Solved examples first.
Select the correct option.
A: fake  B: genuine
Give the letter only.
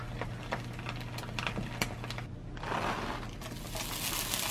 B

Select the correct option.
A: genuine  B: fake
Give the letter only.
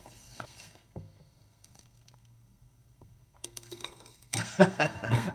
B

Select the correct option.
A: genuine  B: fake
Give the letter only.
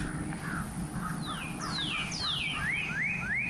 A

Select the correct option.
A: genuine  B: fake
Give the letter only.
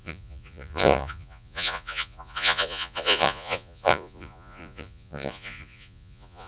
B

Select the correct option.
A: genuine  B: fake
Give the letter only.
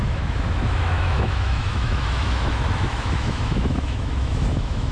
B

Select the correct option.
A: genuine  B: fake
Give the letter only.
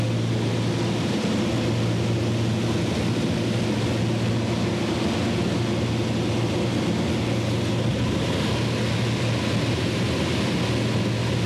A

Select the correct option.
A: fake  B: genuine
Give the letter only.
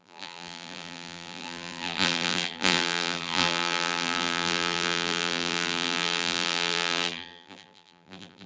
A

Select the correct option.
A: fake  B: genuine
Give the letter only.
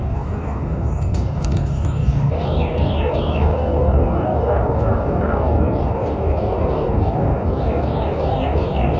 A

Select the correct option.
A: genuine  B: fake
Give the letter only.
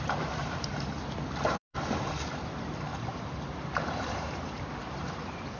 B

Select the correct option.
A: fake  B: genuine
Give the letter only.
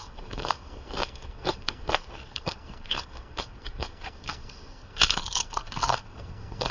A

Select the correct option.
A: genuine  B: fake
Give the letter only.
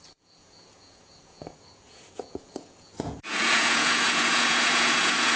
B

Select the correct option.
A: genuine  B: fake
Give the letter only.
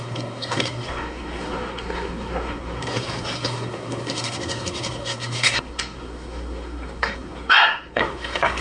B